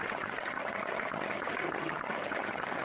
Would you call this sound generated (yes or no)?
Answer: yes